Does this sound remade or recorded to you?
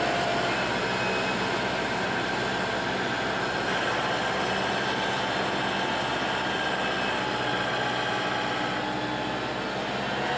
recorded